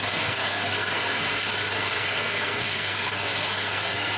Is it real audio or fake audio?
fake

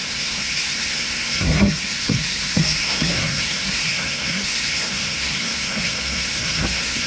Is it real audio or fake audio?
fake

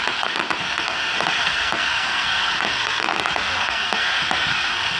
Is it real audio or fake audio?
fake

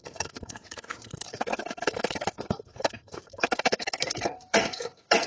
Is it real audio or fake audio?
fake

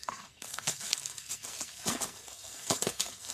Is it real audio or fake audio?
fake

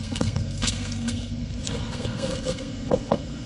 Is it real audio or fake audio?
fake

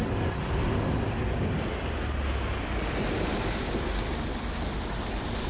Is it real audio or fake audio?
real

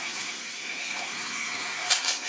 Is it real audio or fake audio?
fake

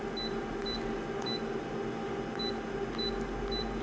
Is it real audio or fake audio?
real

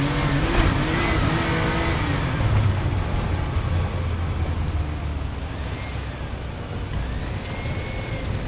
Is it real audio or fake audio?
real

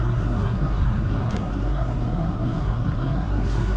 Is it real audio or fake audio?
fake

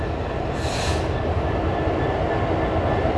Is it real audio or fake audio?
real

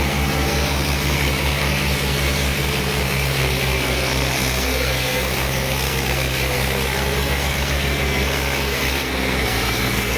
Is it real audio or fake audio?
fake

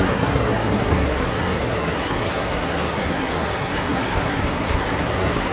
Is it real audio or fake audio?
fake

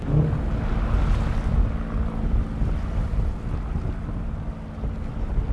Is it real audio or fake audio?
real